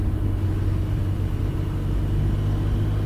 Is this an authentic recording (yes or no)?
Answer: yes